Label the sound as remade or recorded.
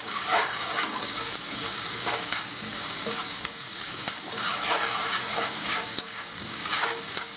remade